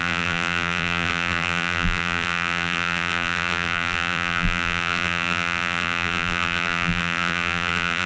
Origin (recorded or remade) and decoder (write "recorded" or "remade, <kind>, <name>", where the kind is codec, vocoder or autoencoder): remade, vocoder, BigVGAN v2